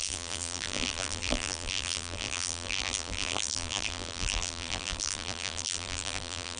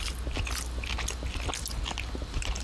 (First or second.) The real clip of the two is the second